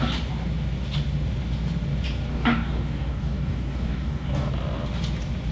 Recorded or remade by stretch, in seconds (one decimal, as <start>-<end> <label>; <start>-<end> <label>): 0.0-2.3 recorded; 2.3-4.5 remade; 4.5-5.5 recorded